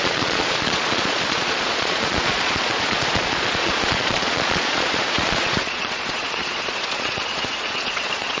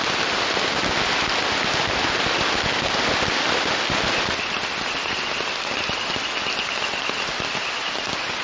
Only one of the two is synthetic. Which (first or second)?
first